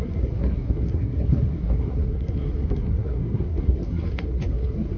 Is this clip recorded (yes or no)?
no